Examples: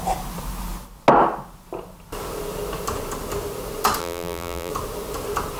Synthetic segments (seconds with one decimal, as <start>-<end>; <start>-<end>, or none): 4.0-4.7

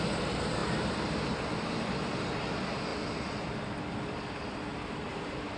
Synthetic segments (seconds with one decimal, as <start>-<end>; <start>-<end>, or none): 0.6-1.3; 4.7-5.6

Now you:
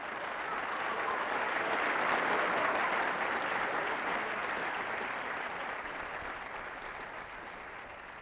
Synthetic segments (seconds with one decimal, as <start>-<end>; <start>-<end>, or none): 2.8-3.7; 4.4-5.5

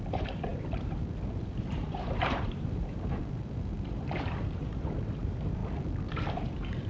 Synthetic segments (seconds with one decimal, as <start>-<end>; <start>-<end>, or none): 0.0-5.6; 6.3-6.9

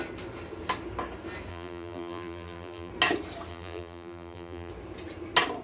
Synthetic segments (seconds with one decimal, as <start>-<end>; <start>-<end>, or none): 1.5-2.9; 3.5-4.7

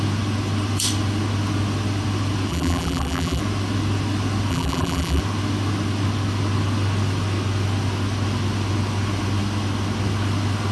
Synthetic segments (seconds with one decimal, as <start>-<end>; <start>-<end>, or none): 2.5-3.4; 4.5-5.2